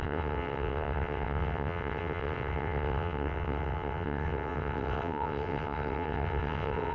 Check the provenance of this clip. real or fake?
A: fake